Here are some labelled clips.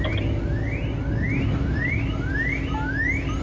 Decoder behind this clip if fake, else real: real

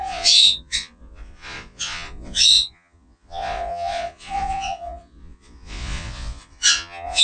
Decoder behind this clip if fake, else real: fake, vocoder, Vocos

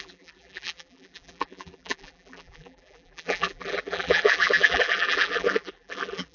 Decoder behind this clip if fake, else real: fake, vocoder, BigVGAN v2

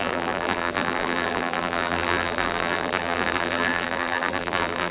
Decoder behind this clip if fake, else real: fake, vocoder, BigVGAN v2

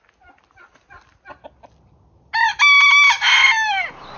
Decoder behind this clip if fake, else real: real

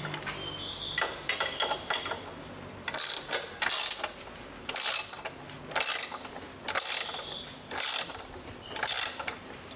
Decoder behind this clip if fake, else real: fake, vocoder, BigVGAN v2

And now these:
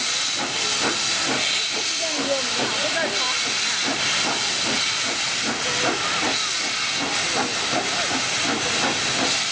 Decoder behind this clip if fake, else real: real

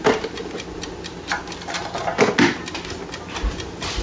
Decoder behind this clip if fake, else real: real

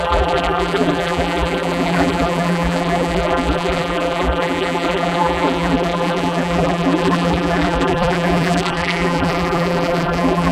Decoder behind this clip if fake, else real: fake, vocoder, BigVGAN v2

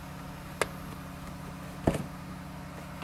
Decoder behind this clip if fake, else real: real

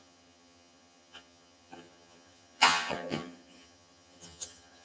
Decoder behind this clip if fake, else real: fake, vocoder, HiFi-GAN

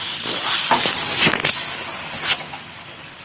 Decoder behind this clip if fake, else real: real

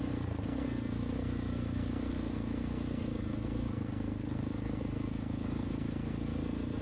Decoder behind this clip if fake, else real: fake, codec, SNAC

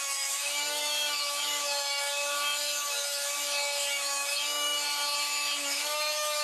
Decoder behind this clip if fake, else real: fake, autoencoder, DAC-VAE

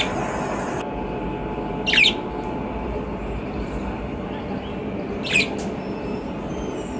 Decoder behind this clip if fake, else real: real